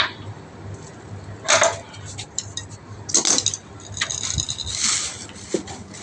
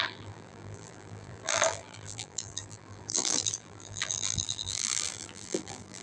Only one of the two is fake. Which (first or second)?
second